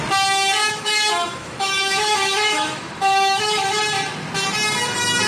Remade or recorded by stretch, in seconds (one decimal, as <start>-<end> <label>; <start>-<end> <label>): 0.0-0.6 recorded; 0.6-3.8 remade; 3.8-5.3 recorded